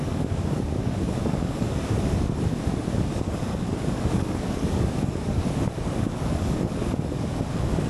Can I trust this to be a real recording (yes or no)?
no